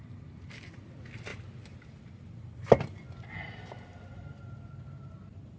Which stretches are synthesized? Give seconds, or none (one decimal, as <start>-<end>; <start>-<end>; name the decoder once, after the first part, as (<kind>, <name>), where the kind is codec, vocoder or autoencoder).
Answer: 1.3-4.4 (vocoder, BigVGAN v2)

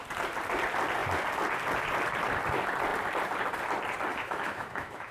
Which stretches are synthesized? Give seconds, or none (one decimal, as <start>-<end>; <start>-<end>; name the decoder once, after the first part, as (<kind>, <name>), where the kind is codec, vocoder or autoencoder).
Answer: 4.1-5.1 (autoencoder, DAC-VAE)

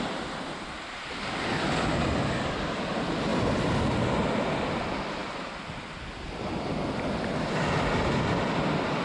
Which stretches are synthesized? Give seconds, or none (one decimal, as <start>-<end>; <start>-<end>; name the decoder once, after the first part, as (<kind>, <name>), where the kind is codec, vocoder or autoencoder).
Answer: none

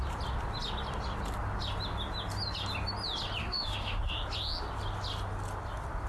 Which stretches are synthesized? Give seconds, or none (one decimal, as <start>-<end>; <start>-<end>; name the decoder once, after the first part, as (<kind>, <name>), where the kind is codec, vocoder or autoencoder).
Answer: 3.4-4.0 (autoencoder, DAC-VAE)